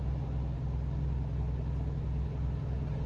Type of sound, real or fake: real